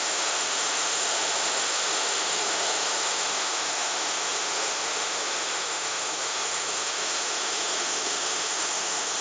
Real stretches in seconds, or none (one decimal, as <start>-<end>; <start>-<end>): none